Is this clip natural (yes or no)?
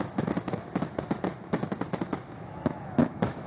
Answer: no